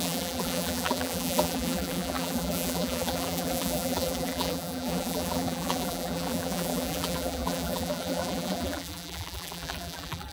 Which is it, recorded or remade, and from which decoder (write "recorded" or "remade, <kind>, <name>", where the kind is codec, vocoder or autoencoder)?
remade, vocoder, BigVGAN v2